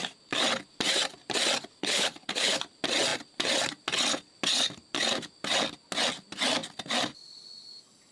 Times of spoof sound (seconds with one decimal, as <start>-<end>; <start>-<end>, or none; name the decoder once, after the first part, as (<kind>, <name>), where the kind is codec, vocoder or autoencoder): 1.8-2.6 (codec, HILCodec)

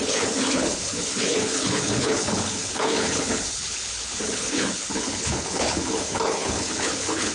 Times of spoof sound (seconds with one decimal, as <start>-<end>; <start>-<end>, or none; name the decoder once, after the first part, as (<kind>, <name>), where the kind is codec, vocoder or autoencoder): 0.0-7.3 (codec, HILCodec)

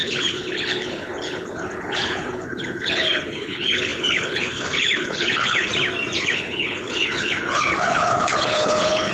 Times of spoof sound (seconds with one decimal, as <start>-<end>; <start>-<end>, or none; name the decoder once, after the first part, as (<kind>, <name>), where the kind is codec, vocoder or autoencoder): 0.0-5.7 (codec, HILCodec); 6.2-9.1

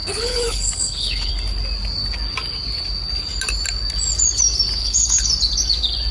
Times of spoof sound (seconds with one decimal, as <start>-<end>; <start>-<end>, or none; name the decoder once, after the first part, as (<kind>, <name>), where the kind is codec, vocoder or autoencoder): 0.0-1.3 (codec, HILCodec); 4.8-5.3

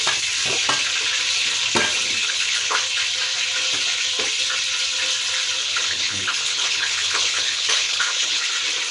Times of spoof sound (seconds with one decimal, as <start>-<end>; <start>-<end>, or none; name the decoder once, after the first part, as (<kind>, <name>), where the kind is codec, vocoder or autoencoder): 2.2-2.8 (codec, HILCodec); 5.6-8.5

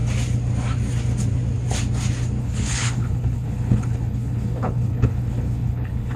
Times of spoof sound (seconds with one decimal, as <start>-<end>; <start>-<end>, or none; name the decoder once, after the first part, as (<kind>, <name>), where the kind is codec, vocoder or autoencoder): 2.4-6.2 (codec, HILCodec)

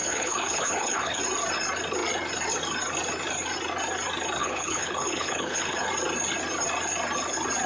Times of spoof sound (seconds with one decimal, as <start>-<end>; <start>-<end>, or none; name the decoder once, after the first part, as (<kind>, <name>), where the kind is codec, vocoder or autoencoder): 0.0-1.2 (codec, HILCodec); 4.4-5.9